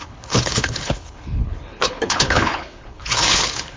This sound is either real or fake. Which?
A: fake